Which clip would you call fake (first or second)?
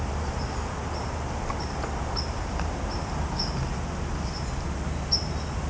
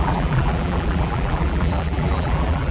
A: second